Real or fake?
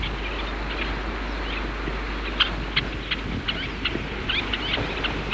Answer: real